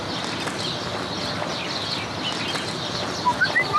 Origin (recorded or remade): recorded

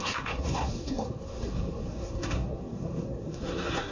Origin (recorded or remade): remade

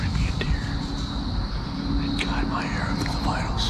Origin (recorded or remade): recorded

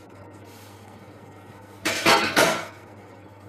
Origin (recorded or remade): remade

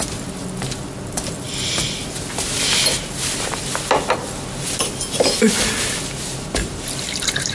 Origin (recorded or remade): recorded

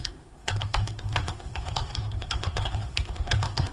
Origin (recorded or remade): remade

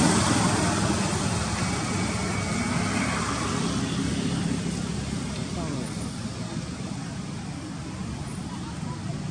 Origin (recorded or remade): recorded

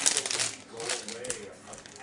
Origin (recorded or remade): recorded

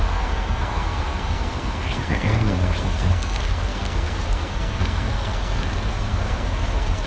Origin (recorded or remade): remade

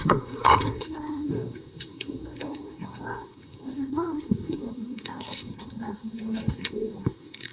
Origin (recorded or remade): remade